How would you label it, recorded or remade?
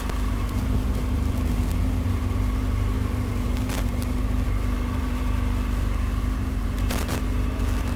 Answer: recorded